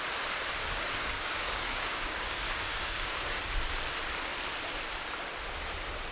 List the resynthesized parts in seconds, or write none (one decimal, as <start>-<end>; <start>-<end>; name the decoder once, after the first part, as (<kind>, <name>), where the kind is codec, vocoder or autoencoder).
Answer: 0.6-3.4 (codec, DAC)